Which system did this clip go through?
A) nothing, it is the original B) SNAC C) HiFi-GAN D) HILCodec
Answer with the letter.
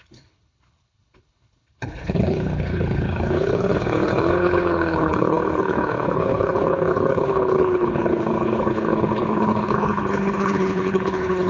D